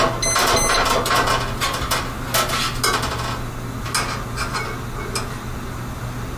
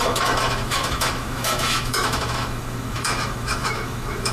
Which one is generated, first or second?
second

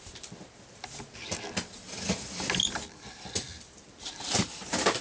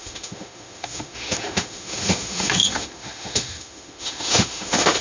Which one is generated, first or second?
second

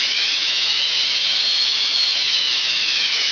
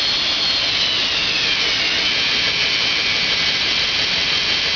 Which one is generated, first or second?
first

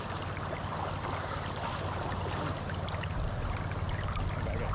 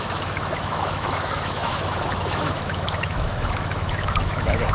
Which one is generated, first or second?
second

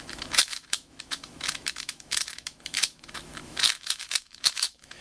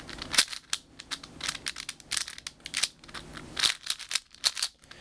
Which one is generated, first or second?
first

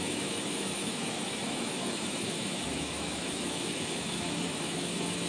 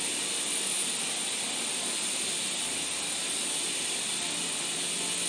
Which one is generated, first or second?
first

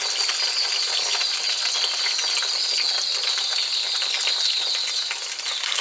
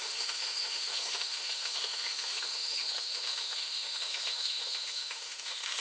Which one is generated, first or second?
second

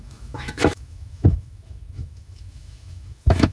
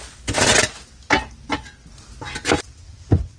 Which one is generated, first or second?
first